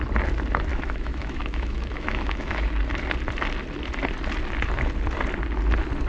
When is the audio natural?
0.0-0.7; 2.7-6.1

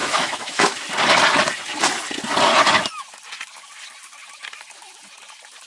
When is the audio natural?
0.9-5.7